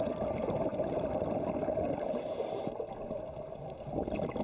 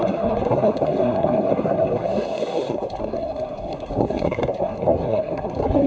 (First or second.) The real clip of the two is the first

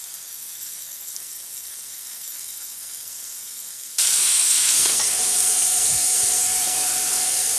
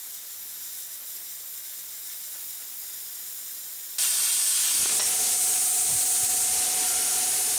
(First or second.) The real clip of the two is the second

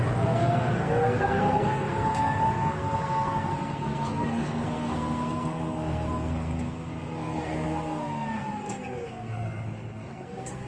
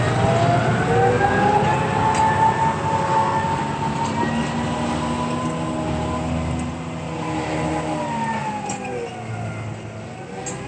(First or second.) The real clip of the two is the second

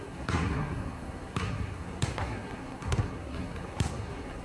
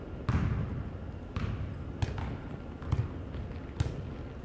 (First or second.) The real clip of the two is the second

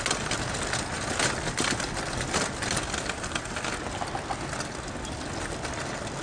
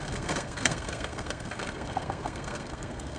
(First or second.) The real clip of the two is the first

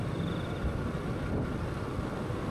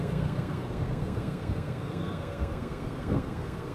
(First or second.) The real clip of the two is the first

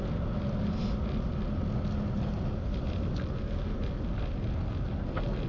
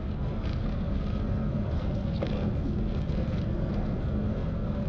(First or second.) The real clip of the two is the first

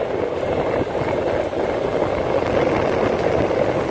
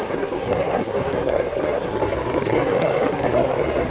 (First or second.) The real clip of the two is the first